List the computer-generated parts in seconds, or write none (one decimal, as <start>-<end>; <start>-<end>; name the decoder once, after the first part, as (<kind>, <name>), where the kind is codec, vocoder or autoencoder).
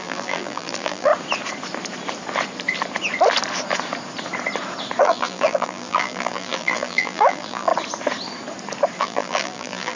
0.0-1.1 (vocoder, BigVGAN v2); 5.0-7.7; 9.0-10.0